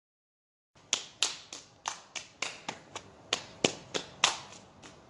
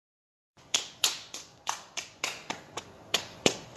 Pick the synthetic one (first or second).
second